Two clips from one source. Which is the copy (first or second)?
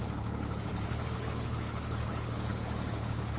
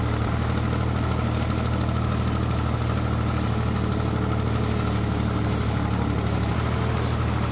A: first